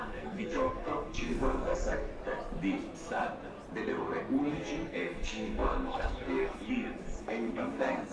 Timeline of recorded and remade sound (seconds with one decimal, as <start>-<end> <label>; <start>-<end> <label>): 0.0-2.1 remade; 2.1-4.5 recorded; 4.5-8.1 remade